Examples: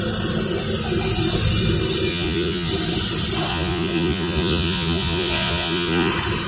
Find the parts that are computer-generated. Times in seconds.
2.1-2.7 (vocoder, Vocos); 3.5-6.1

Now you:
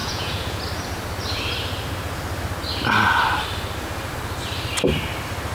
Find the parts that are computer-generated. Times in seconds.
0.0-0.6 (vocoder, Vocos)

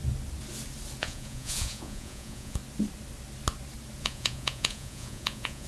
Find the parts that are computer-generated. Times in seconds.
1.0-2.6 (vocoder, Vocos); 4.0-5.7

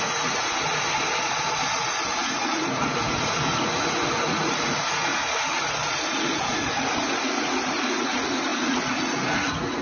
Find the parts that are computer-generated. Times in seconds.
0.0-0.5 (vocoder, Vocos); 1.7-9.8

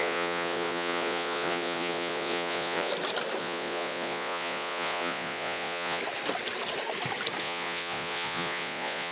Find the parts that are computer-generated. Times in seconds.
0.0-2.9 (vocoder, Vocos); 3.4-6.0; 7.4-9.1

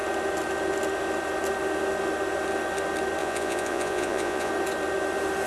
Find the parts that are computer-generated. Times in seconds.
3.2-4.5 (vocoder, Vocos)